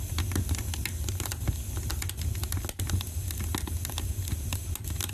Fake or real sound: real